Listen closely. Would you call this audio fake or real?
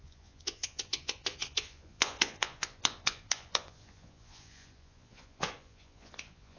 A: fake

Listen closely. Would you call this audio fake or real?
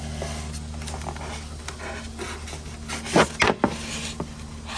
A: real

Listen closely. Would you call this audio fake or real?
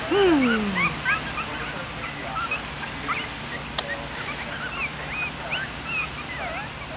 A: real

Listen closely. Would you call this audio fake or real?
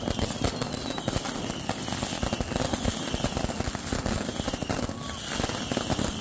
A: real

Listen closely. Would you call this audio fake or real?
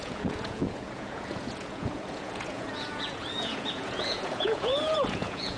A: fake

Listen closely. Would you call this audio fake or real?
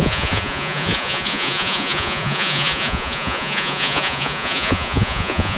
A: fake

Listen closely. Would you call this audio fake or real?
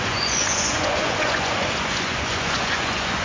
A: fake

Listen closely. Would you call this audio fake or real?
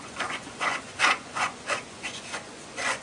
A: fake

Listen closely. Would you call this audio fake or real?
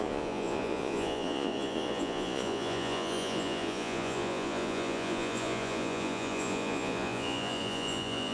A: fake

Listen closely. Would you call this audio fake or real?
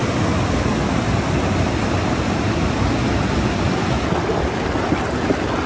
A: real